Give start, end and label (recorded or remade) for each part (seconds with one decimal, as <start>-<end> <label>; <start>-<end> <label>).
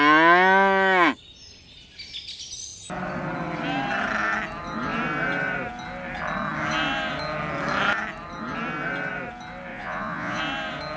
0.0-9.7 recorded; 9.7-10.4 remade; 10.4-11.0 recorded